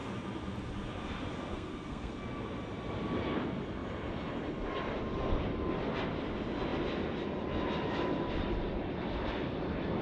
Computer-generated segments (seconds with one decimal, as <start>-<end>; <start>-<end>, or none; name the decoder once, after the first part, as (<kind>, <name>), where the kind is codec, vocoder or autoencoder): 1.5-2.1 (codec, SNAC)